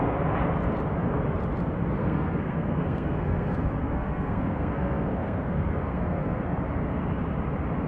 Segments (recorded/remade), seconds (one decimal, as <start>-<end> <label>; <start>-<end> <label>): 0.0-2.0 recorded; 2.0-6.4 remade; 6.4-7.9 recorded